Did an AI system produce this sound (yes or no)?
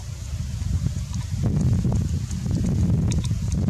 no